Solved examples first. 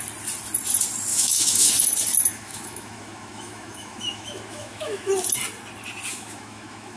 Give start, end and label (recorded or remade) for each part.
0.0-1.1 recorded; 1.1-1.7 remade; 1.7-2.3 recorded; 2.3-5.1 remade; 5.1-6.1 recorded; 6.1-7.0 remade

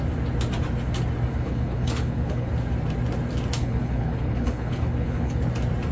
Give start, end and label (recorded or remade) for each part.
0.0-1.3 recorded; 1.3-2.5 remade; 2.5-3.6 recorded; 3.6-5.4 remade; 5.4-5.9 recorded